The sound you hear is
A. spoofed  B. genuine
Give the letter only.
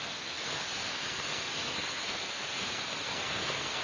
A